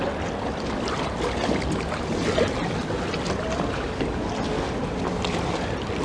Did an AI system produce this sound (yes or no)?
no